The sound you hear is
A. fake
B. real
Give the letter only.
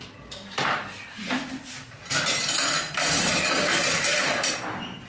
A